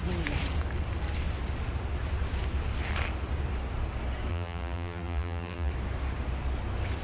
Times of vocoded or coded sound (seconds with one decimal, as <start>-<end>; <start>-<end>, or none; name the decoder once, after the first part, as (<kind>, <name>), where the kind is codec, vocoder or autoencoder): 4.3-5.7 (vocoder, BigVGAN v2)